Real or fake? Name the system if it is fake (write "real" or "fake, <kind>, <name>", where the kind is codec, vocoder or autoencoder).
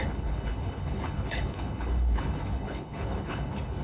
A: fake, codec, HILCodec